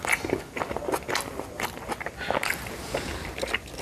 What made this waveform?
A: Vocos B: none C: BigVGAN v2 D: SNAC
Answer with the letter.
B